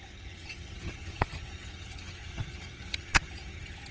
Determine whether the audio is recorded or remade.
remade